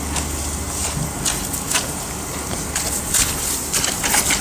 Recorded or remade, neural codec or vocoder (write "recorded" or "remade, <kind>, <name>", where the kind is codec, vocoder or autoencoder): recorded